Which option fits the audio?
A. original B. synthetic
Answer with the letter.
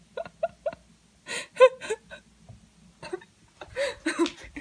A